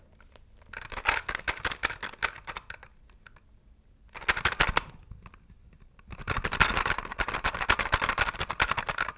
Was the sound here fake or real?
real